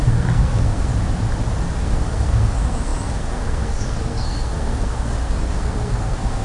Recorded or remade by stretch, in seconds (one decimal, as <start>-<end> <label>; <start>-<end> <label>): 0.0-0.9 remade; 0.9-1.8 recorded; 1.8-6.4 remade